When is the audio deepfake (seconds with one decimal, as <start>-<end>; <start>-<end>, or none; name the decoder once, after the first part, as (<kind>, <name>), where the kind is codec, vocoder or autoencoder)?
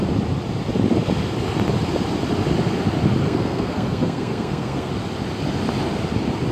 3.2-4.9 (codec, SNAC)